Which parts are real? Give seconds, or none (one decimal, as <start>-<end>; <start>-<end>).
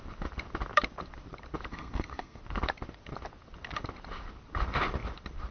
0.0-1.7; 2.4-5.5